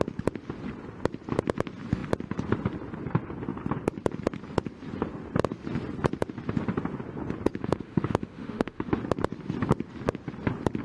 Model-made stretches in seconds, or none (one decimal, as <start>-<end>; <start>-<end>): 7.6-8.9